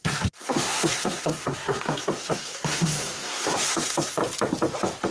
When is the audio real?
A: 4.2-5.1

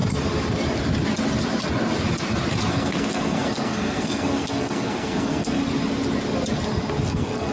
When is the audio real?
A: 0.0-2.7; 5.6-7.1

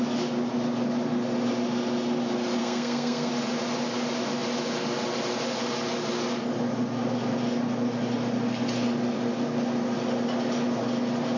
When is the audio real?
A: 0.0-2.6; 3.3-11.4

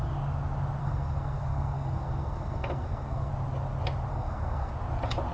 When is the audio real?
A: 0.0-0.8; 3.3-4.1; 4.7-5.3

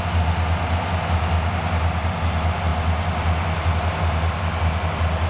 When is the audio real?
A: 0.0-5.3

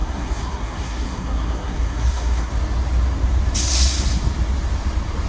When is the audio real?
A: 2.5-3.6; 4.2-5.3

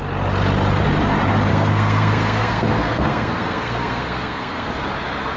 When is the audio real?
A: 0.0-1.5; 4.7-5.4